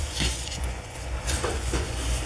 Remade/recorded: remade